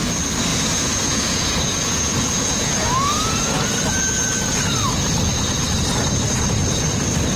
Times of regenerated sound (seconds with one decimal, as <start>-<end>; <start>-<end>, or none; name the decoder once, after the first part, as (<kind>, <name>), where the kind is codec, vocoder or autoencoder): 0.5-3.9 (vocoder, Vocos)